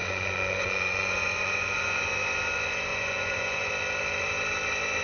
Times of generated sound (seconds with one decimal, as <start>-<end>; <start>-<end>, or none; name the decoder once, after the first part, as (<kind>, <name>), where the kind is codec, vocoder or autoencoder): 0.0-2.0 (vocoder, Vocos); 2.9-3.7